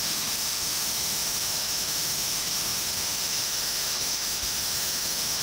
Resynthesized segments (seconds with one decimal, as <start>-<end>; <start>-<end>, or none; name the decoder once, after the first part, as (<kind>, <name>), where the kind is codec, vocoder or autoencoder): 0.0-5.4 (autoencoder, DAC-VAE)